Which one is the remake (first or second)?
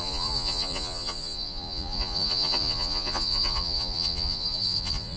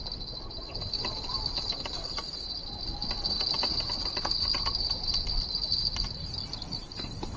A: first